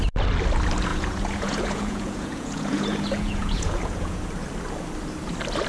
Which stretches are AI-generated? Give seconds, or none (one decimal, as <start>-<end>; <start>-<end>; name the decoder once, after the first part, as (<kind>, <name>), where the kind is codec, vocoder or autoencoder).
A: 0.9-4.2 (vocoder, Vocos)